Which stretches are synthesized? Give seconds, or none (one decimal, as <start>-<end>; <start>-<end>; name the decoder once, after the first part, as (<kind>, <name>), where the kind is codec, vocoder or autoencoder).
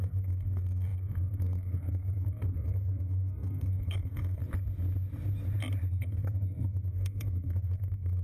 0.0-4.4 (codec, SNAC); 5.9-8.2